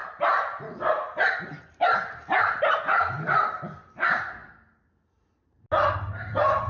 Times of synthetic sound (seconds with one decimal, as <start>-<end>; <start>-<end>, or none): 1.6-4.4